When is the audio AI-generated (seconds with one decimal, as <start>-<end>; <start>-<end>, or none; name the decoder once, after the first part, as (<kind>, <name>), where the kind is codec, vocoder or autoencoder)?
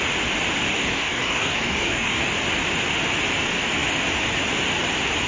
0.7-2.3 (codec, DAC)